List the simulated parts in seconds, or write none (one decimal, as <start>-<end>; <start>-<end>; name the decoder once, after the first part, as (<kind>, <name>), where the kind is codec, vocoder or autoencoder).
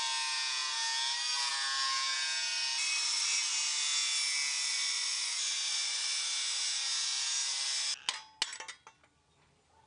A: 4.7-6.2 (vocoder, Vocos)